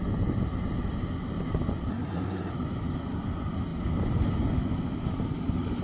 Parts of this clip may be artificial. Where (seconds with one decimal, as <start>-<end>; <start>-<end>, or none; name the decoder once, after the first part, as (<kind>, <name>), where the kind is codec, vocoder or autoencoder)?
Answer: 1.9-2.5 (codec, SNAC)